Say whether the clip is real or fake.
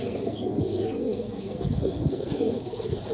fake